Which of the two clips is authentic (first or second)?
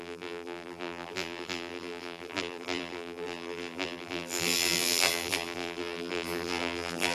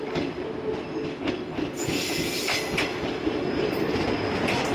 second